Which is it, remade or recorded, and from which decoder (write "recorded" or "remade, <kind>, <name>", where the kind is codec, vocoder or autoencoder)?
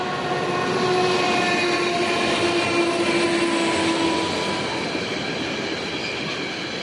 recorded